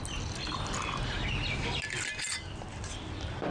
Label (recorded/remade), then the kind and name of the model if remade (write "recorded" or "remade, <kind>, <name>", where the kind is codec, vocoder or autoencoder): recorded